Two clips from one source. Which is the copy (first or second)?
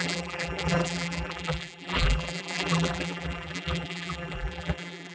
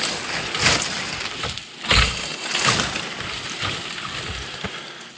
first